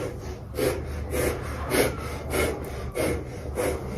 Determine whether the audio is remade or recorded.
recorded